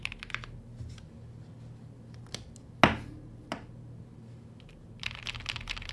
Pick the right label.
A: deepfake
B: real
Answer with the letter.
B